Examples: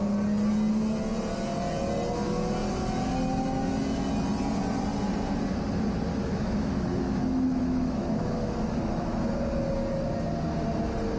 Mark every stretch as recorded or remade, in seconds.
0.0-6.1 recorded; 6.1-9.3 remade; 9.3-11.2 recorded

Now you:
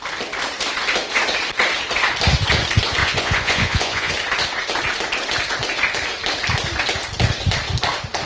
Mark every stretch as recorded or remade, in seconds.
0.0-3.0 recorded; 3.0-4.1 remade; 4.1-8.3 recorded

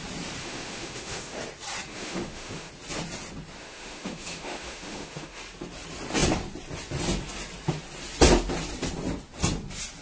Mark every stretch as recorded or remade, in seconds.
0.0-0.4 recorded; 0.4-1.4 remade; 1.4-1.9 recorded; 1.9-2.7 remade; 2.7-3.6 recorded; 3.6-5.4 remade; 5.4-10.0 recorded

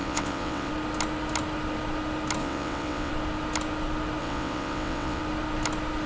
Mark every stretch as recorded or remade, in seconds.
0.0-0.7 remade; 0.7-2.4 recorded; 2.4-3.1 remade; 3.1-4.2 recorded; 4.2-5.2 remade; 5.2-6.1 recorded

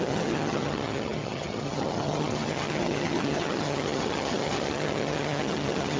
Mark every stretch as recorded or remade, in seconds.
0.0-6.0 remade

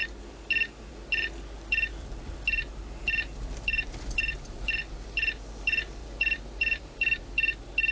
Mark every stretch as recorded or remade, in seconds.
0.0-6.0 recorded; 6.0-7.2 remade; 7.2-7.9 recorded